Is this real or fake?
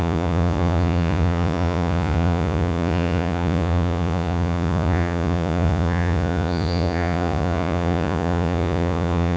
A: fake